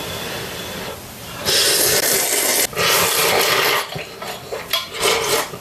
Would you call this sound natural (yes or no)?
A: yes